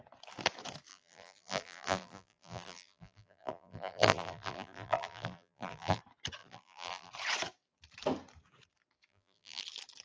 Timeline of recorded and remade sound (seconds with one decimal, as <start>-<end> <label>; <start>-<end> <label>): 0.0-0.9 recorded; 0.9-6.0 remade; 6.0-6.4 recorded; 6.4-7.1 remade; 7.1-9.1 recorded; 9.1-9.6 remade; 9.6-10.0 recorded